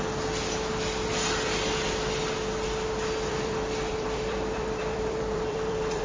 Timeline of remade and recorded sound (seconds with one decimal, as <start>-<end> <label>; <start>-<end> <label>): 0.0-3.3 recorded; 3.3-6.0 remade